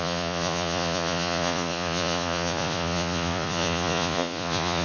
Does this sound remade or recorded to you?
remade